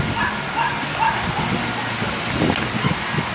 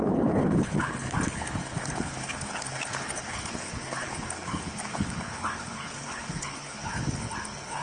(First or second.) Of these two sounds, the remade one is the second